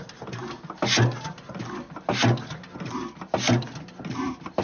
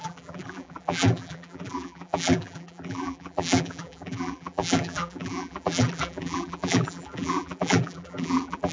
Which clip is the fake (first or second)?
second